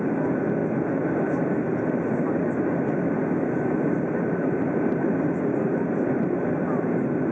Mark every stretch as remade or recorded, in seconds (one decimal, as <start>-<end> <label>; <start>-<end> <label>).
0.0-7.3 recorded